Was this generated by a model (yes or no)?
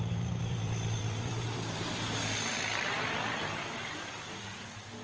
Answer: yes